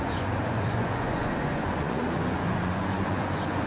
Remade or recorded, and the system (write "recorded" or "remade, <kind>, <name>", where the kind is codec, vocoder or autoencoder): remade, vocoder, Vocos